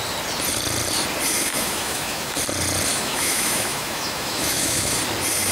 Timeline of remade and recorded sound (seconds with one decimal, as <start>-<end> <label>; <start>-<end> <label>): 0.0-1.5 recorded; 1.5-2.4 remade; 2.4-2.9 recorded; 2.9-5.0 remade; 5.0-5.5 recorded